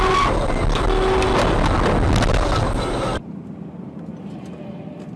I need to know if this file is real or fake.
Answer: real